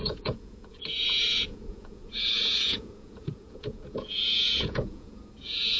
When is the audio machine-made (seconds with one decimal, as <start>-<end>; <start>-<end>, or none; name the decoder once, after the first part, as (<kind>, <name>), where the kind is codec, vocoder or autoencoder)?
0.0-5.8 (vocoder, Vocos)